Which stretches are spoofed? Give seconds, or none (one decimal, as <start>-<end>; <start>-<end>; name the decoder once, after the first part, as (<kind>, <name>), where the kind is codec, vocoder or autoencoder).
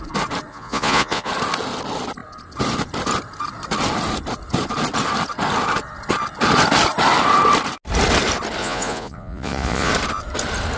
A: 0.5-1.3 (vocoder, Vocos); 8.6-9.9